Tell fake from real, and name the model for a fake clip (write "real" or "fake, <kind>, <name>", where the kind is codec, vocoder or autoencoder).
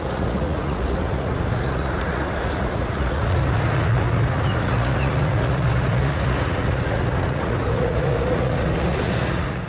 fake, vocoder, Vocos